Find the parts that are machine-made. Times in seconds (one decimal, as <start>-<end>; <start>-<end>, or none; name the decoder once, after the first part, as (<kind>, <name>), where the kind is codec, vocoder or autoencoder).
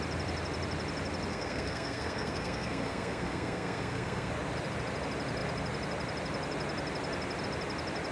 1.3-4.3 (codec, SNAC)